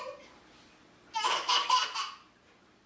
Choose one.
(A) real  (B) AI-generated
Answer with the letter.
A